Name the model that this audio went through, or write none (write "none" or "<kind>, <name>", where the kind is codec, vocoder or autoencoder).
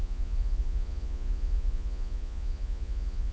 vocoder, Vocos